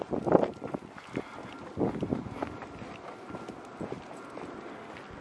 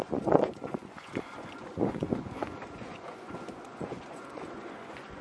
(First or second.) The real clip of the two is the first